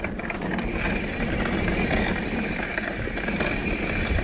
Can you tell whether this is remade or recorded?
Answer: recorded